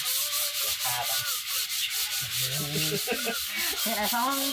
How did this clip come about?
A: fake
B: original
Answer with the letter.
B